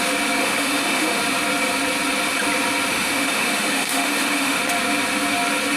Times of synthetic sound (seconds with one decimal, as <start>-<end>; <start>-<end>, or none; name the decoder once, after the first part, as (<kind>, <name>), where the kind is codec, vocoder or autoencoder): 0.4-1.2 (autoencoder, DAC-VAE); 2.9-4.6